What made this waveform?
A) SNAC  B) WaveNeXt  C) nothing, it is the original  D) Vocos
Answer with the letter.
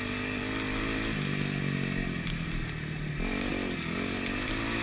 C